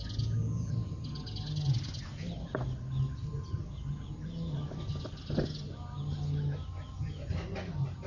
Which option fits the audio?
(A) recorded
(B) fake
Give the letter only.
A